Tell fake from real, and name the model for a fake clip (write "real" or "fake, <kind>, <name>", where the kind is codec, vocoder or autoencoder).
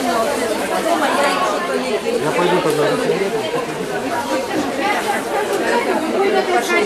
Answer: fake, vocoder, BigVGAN v2